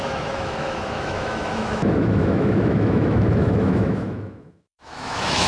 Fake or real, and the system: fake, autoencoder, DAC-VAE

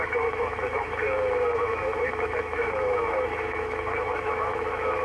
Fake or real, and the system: fake, autoencoder, DAC-VAE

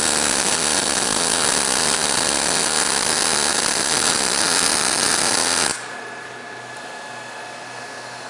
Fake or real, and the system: real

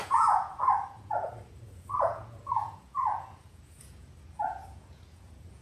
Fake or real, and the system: fake, vocoder, Vocos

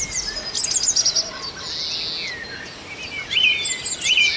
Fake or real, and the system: real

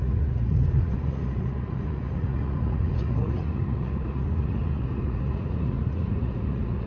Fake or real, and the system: fake, vocoder, Vocos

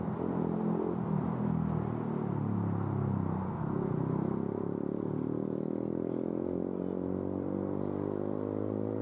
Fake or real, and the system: real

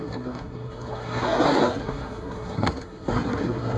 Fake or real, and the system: fake, codec, SNAC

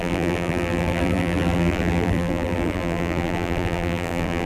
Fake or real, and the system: fake, vocoder, BigVGAN v2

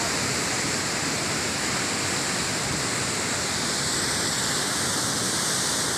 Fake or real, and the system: real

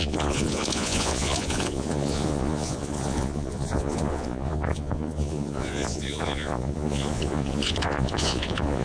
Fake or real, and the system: fake, vocoder, Vocos